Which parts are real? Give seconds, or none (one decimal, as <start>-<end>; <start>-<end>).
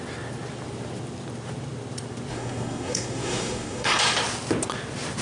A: 0.0-2.3; 4.0-5.2